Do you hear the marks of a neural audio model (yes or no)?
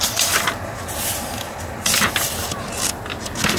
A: no